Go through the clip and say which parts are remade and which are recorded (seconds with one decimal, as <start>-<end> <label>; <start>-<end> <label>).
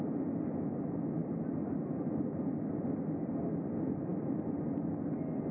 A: 0.0-5.5 recorded